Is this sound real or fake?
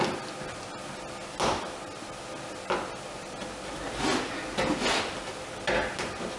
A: real